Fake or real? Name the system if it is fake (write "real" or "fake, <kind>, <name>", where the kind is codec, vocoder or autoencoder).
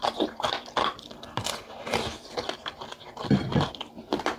fake, vocoder, BigVGAN v2